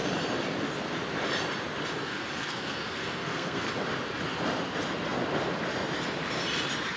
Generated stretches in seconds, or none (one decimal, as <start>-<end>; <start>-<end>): 2.0-3.7